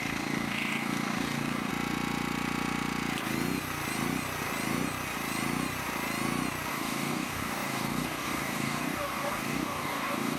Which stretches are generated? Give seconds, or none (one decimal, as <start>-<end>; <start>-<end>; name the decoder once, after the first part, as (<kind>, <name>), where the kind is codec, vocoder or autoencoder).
0.0-1.7 (codec, DAC); 6.7-10.4